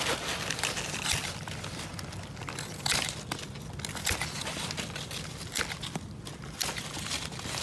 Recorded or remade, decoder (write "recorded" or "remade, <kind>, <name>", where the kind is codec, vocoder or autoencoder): recorded